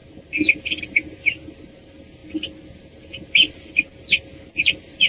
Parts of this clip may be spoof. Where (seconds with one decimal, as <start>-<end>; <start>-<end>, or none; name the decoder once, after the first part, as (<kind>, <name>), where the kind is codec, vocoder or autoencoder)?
none